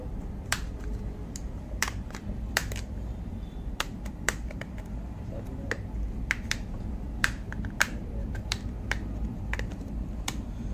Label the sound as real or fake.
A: fake